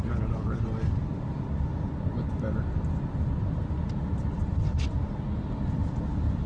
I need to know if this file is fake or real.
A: real